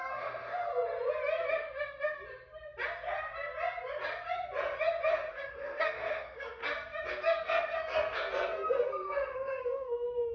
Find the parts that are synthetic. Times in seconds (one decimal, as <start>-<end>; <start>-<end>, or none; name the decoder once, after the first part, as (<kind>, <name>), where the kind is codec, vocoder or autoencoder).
0.0-0.7 (codec, SNAC); 1.5-2.2; 5.3-6.6; 7.1-10.3